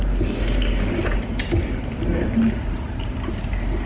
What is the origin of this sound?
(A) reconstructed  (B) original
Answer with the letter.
B